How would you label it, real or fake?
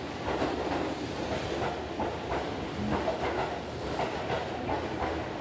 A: real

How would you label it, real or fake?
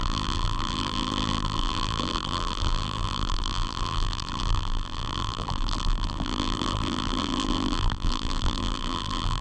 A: fake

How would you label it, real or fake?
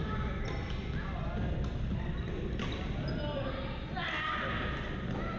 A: real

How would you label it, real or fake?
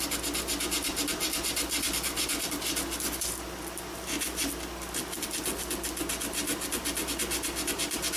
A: real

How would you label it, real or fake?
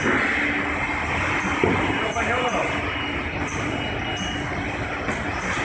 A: real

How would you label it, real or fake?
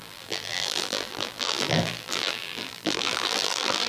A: fake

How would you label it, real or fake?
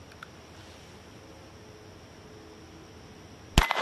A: real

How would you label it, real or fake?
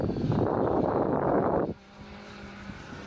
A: real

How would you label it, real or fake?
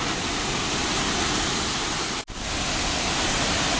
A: real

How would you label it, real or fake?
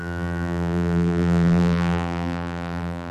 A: fake